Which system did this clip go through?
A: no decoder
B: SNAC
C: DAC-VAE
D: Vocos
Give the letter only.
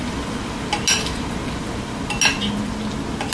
A